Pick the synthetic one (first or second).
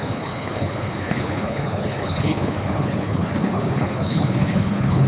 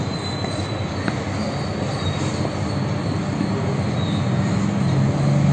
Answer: first